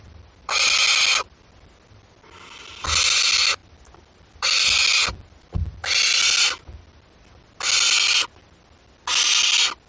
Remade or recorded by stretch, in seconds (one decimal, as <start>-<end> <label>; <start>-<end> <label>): 0.0-9.9 recorded